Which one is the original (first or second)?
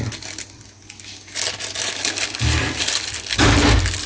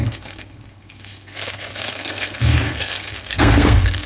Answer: first